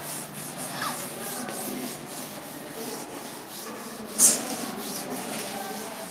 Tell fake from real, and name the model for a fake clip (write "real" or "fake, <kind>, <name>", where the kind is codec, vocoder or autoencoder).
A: real